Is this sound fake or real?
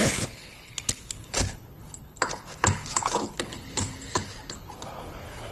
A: fake